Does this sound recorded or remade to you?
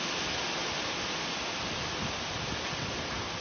recorded